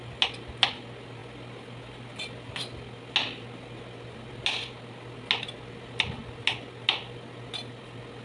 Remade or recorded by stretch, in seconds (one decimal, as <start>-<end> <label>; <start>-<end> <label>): 0.0-8.2 recorded